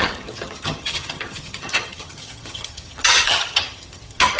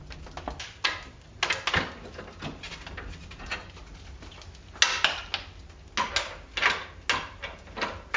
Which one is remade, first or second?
first